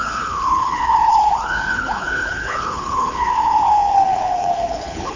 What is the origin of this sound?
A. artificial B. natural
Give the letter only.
A